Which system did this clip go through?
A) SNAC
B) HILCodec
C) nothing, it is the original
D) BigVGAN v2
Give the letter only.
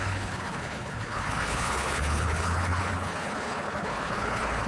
B